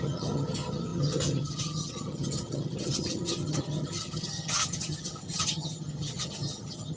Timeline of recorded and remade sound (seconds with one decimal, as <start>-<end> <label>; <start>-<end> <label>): 0.0-7.0 remade